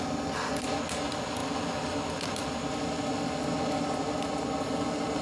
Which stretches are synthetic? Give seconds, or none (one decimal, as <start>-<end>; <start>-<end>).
none